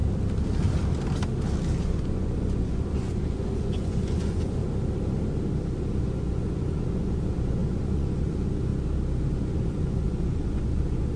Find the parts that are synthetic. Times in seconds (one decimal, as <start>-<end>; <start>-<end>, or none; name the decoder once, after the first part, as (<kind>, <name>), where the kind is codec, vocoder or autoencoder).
1.8-4.6 (vocoder, Vocos); 6.0-8.7; 9.3-11.2